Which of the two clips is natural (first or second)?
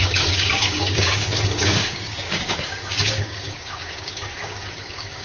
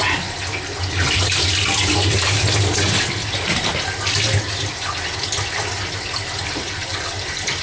second